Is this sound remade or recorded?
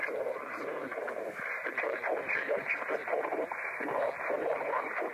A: remade